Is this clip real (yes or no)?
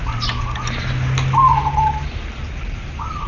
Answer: yes